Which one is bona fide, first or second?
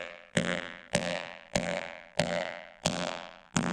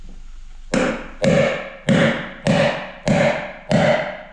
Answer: second